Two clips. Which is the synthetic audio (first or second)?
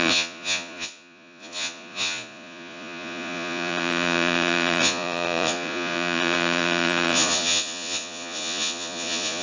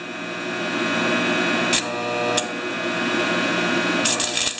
first